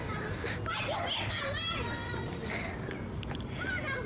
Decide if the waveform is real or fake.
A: real